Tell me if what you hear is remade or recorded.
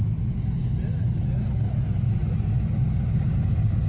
recorded